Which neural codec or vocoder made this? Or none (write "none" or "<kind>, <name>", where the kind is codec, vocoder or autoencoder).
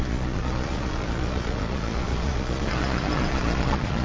vocoder, Vocos